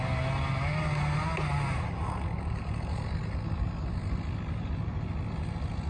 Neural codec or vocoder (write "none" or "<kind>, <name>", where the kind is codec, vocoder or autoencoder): none